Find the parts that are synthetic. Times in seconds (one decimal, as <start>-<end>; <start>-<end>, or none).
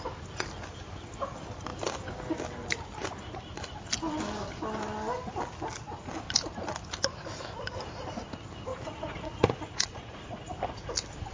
8.7-10.2